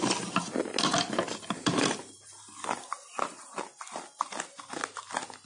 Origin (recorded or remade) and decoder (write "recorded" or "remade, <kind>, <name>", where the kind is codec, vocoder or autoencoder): recorded